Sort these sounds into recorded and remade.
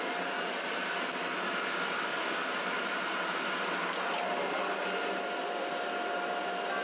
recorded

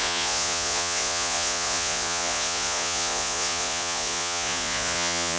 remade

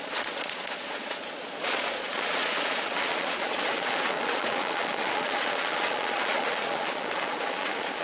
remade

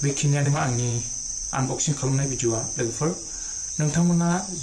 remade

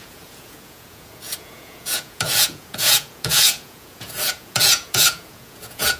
remade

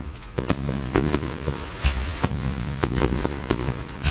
remade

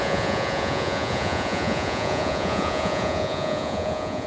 remade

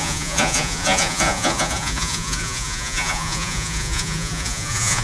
remade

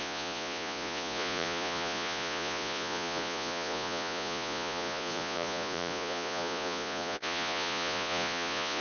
remade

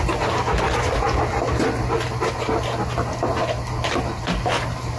recorded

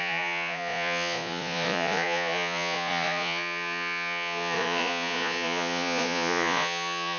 remade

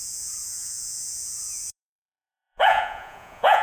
remade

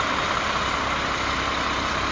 recorded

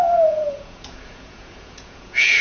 remade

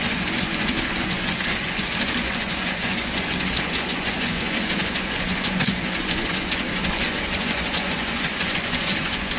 remade